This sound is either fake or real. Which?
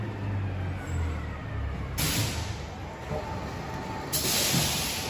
real